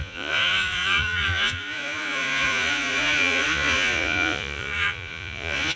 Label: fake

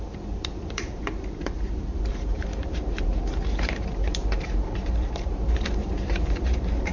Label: fake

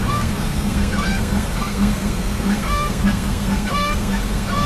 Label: fake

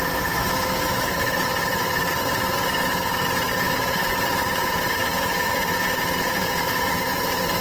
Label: fake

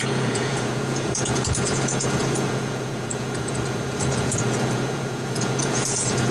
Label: fake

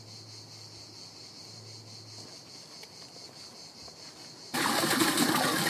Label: real